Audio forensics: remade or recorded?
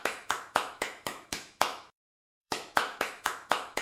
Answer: remade